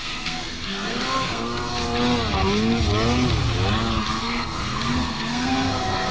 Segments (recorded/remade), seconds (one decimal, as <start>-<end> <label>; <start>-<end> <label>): 0.0-1.7 remade; 1.7-4.2 recorded; 4.2-6.1 remade